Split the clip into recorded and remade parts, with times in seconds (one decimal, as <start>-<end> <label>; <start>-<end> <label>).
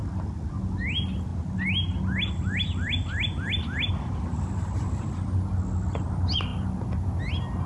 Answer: 0.0-7.7 recorded